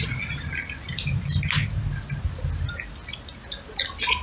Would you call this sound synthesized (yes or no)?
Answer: no